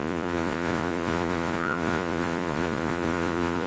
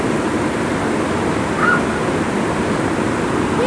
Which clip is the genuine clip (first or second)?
second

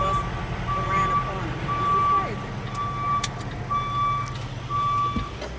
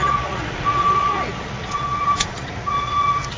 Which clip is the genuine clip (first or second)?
first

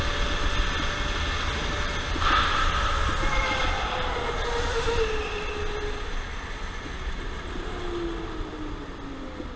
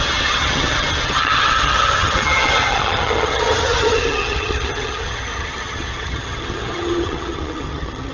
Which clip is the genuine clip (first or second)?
first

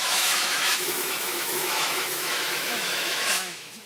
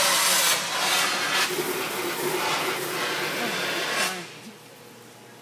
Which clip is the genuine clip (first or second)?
second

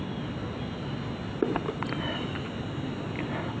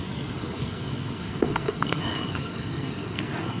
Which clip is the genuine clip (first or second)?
first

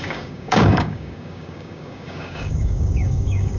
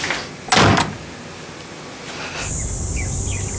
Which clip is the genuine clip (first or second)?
second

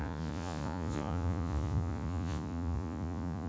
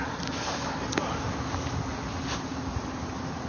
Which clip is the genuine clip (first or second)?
second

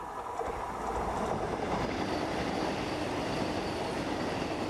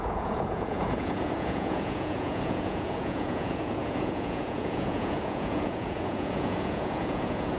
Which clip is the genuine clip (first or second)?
first